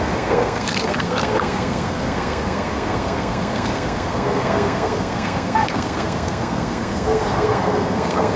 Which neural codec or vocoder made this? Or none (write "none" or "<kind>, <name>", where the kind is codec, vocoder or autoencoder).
codec, SNAC